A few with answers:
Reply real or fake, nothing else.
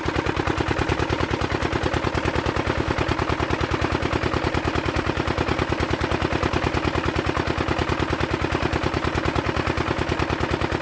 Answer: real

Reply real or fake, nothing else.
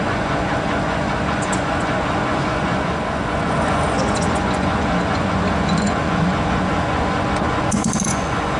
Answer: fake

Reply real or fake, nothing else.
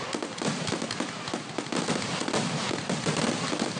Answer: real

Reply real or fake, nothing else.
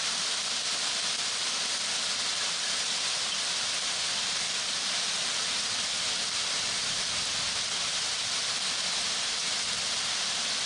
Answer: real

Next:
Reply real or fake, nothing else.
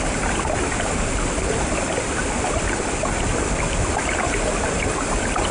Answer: fake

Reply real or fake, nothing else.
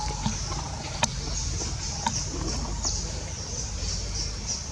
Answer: fake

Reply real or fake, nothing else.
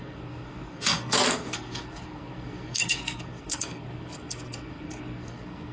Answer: fake